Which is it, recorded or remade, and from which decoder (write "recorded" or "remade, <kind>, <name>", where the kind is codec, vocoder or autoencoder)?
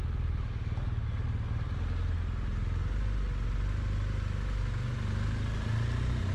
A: recorded